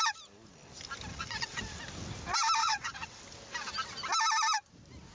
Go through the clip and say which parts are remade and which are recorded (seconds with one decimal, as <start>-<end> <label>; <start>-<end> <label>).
0.0-1.1 recorded; 1.1-1.6 remade; 1.6-2.6 recorded; 2.6-3.2 remade; 3.2-5.1 recorded